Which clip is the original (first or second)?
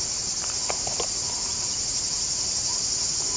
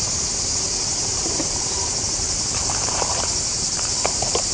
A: first